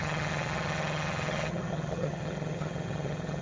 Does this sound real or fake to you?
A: fake